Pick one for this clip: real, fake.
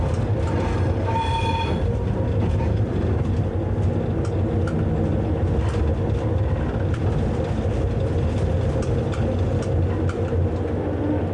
real